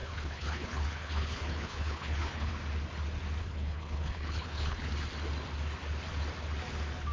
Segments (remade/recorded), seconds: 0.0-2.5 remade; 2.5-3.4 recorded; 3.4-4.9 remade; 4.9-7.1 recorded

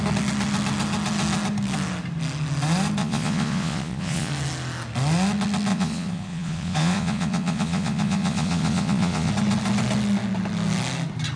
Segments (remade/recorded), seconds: 0.0-3.0 recorded; 3.0-4.3 remade; 4.3-5.7 recorded; 5.7-9.3 remade; 9.3-11.4 recorded

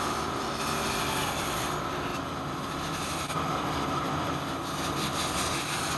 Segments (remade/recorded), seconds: 0.0-6.0 recorded

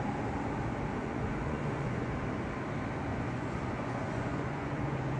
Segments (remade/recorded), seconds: 0.0-1.0 recorded; 1.0-2.1 remade; 2.1-3.1 recorded; 3.1-5.2 remade